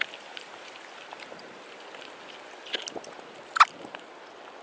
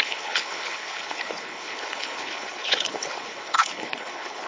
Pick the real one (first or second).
first